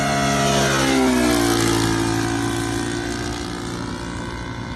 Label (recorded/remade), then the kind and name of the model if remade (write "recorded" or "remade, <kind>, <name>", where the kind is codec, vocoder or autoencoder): recorded